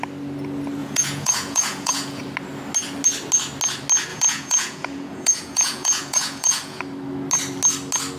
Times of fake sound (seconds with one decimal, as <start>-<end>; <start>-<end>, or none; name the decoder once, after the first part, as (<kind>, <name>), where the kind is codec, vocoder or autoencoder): 0.8-2.2 (vocoder, Vocos); 4.1-6.8